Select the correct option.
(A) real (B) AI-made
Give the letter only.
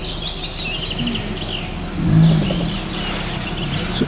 A